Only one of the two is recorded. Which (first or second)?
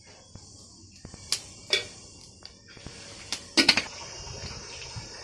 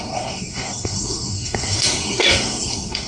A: first